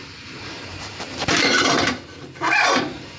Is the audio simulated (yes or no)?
yes